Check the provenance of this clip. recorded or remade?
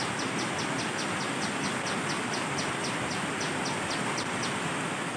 recorded